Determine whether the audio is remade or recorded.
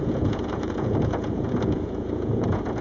remade